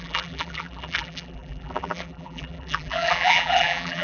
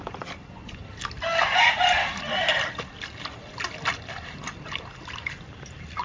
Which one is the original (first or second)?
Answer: second